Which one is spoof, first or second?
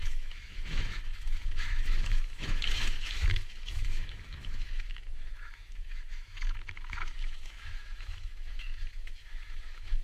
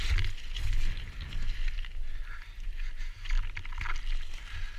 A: first